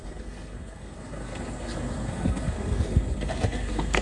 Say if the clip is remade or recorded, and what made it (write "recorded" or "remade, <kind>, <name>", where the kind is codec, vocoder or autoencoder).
remade, codec, SNAC